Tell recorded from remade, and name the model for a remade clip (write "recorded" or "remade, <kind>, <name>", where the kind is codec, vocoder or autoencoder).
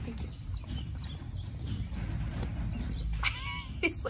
recorded